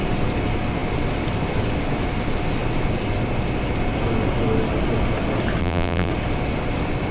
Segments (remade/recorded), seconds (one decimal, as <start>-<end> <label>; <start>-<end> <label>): 0.0-5.6 recorded; 5.6-6.1 remade; 6.1-7.1 recorded